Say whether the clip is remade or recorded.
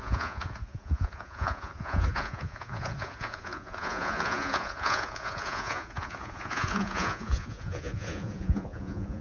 remade